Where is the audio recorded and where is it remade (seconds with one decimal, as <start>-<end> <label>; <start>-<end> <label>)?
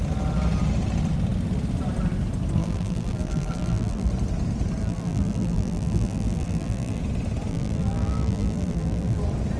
0.0-2.6 recorded; 2.6-4.1 remade; 4.1-4.8 recorded; 4.8-7.0 remade; 7.0-7.5 recorded; 7.5-9.2 remade; 9.2-9.6 recorded